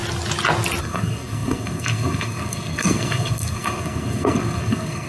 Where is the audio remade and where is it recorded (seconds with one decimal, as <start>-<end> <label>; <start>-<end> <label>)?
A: 0.0-0.8 recorded; 0.8-5.1 remade